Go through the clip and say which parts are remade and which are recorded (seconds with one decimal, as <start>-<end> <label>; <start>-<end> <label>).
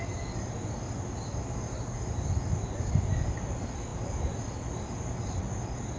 0.0-6.0 recorded